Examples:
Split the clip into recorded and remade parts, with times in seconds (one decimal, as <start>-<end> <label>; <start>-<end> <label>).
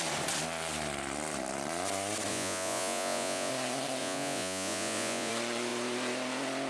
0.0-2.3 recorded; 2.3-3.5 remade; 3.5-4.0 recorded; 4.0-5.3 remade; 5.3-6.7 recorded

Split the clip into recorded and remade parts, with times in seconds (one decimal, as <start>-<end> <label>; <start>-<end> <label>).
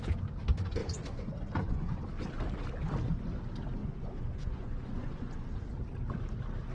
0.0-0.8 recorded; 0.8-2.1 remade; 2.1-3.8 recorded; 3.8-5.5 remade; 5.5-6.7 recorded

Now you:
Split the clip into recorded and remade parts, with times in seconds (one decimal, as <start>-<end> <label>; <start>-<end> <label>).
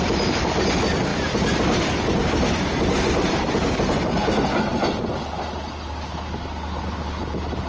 0.0-7.7 recorded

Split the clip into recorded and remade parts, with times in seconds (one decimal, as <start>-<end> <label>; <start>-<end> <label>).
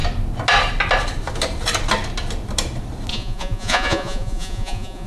0.0-3.1 recorded; 3.1-5.1 remade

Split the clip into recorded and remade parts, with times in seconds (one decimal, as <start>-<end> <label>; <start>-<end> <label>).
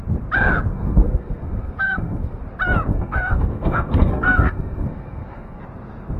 0.0-0.7 recorded; 0.7-2.4 remade; 2.4-2.9 recorded; 2.9-5.6 remade; 5.6-6.2 recorded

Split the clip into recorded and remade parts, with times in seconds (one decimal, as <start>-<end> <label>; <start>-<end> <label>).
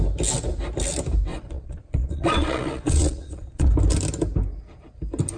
0.0-1.3 recorded; 1.3-3.7 remade; 3.7-5.4 recorded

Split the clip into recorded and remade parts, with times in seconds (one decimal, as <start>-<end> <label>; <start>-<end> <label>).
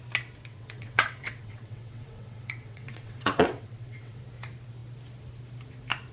0.0-0.5 recorded; 0.5-4.2 remade; 4.2-6.1 recorded